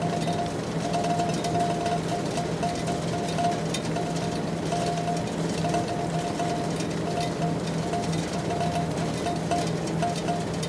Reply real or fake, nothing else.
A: real